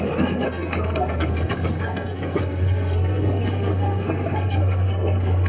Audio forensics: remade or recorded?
remade